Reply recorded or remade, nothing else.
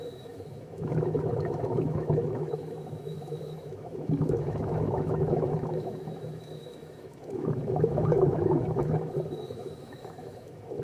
remade